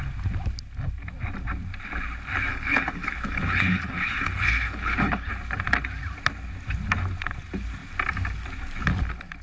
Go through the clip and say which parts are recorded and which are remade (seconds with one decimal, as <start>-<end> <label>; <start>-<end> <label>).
0.0-2.5 recorded; 2.5-5.3 remade; 5.3-9.4 recorded